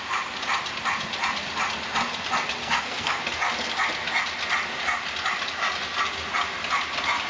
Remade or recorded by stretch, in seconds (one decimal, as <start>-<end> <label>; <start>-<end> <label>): 0.0-2.6 recorded; 2.6-3.2 remade; 3.2-7.3 recorded

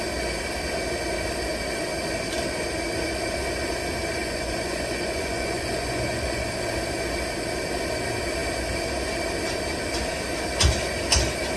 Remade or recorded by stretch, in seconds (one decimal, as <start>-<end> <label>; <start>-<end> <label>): 0.0-4.2 recorded; 4.2-6.5 remade; 6.5-11.6 recorded

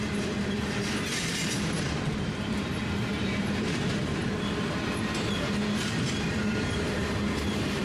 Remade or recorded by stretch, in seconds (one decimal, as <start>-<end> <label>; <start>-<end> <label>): 0.0-7.8 remade